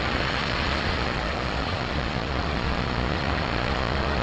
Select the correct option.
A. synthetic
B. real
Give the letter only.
A